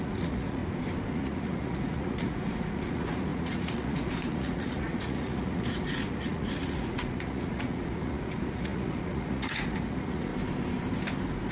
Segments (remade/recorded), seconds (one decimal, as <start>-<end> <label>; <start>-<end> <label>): 0.0-0.6 remade; 0.6-1.1 recorded; 1.1-10.3 remade; 10.3-11.5 recorded